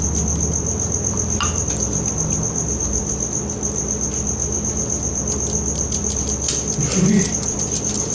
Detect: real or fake real